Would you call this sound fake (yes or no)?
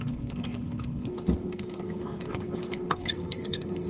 yes